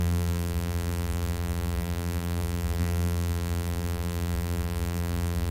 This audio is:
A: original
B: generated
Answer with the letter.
B